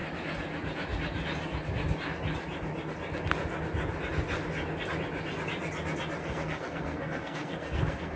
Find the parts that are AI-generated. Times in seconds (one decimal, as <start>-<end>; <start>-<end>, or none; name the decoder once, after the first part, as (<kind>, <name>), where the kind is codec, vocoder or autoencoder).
6.2-8.2 (codec, SNAC)